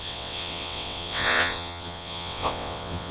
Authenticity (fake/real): fake